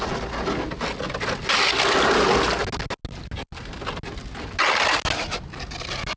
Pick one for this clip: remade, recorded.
recorded